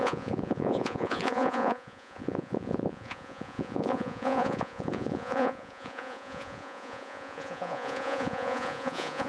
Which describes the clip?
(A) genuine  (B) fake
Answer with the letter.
B